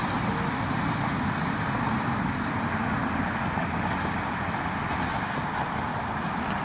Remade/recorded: recorded